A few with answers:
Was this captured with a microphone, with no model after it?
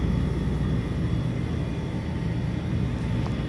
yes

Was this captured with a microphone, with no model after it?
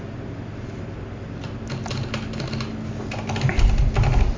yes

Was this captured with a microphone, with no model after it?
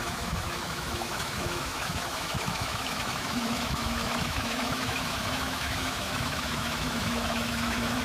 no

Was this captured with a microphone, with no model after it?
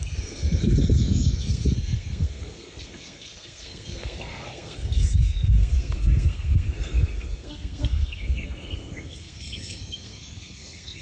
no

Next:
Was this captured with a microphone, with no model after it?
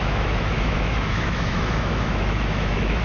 no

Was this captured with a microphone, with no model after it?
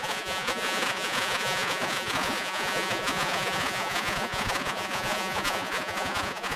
no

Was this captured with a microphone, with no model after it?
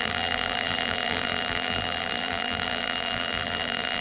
no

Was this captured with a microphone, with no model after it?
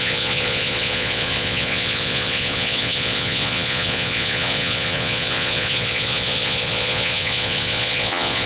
no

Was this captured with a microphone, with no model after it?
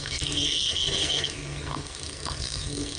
no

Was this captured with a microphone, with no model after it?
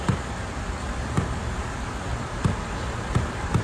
no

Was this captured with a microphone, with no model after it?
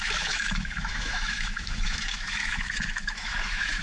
no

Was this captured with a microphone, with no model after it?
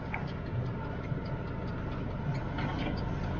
yes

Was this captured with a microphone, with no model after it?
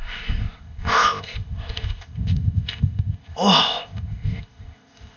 no